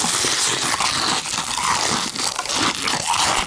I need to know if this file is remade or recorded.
recorded